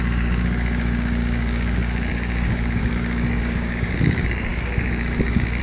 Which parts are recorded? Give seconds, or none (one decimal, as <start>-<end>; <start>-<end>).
none